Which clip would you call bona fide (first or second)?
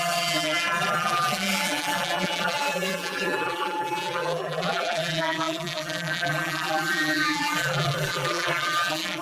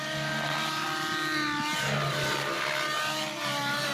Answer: second